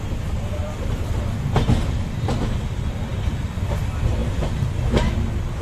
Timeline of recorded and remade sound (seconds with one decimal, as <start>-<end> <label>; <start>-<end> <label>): 0.0-5.6 recorded